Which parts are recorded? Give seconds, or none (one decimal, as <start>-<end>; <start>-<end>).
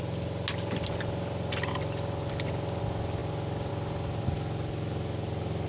0.0-5.7